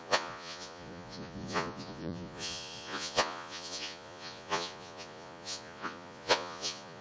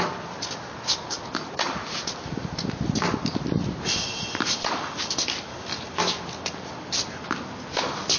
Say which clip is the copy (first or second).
first